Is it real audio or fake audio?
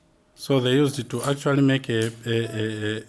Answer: real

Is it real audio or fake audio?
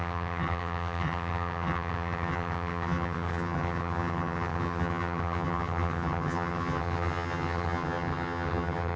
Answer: fake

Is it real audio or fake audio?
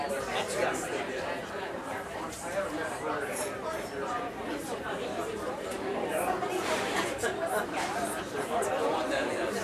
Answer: fake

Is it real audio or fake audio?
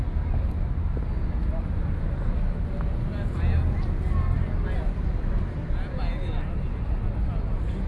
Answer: real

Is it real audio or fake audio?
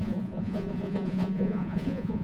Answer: fake